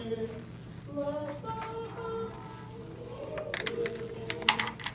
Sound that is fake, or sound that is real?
real